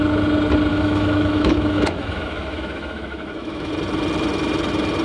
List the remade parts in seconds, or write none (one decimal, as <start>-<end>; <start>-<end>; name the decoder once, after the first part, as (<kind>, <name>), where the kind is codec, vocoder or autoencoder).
0.7-3.7 (autoencoder, DAC-VAE)